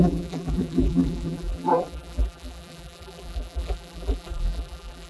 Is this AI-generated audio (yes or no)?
yes